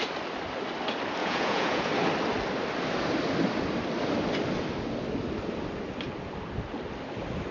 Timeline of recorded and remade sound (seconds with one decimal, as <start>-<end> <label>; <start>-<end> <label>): 0.0-1.2 recorded; 1.2-1.9 remade; 1.9-7.5 recorded